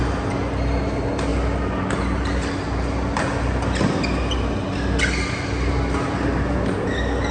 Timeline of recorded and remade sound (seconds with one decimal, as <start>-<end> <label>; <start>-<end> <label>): 0.0-7.3 recorded